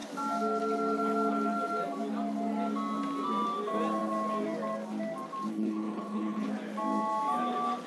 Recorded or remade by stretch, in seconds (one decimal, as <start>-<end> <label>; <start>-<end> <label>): 0.0-5.5 recorded; 5.5-6.5 remade; 6.5-7.9 recorded